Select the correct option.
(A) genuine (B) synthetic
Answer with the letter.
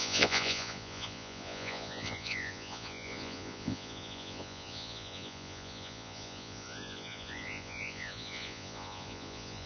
B